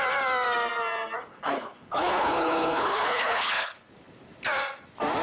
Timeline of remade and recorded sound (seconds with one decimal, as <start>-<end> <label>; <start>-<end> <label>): 0.0-1.3 recorded; 1.3-3.9 remade; 3.9-5.2 recorded